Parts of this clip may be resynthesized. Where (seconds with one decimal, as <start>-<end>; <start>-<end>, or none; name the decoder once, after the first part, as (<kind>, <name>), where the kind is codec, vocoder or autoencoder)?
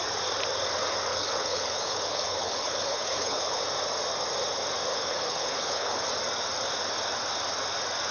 1.1-3.6 (codec, HILCodec); 4.9-6.1